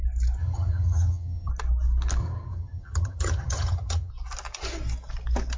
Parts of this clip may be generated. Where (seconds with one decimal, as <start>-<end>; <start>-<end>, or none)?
0.4-1.5; 2.2-4.1